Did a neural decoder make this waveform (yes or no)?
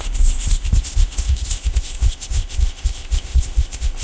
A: yes